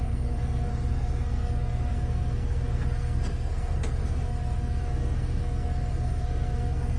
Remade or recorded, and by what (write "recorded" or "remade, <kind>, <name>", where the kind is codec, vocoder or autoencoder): remade, codec, SNAC